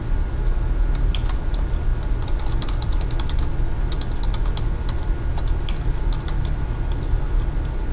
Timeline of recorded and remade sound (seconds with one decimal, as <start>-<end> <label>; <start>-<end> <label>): 0.0-7.9 recorded